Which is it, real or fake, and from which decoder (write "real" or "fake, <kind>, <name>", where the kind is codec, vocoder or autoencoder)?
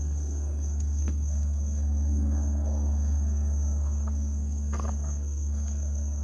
fake, codec, SNAC